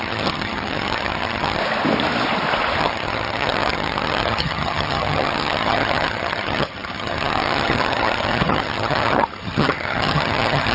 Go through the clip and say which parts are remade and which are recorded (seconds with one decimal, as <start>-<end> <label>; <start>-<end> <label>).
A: 0.0-1.6 remade; 1.6-2.8 recorded; 2.8-10.7 remade